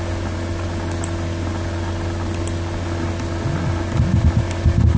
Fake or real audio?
real